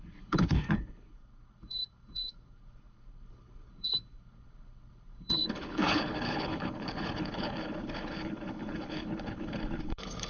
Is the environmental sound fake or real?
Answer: fake